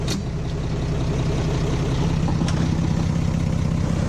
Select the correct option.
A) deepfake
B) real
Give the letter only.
B